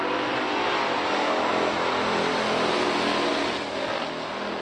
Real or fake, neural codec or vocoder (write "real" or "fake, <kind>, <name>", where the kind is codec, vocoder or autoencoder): real